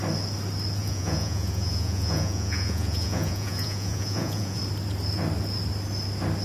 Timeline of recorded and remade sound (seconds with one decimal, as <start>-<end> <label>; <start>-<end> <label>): 0.0-0.8 recorded; 0.8-4.6 remade; 4.6-6.4 recorded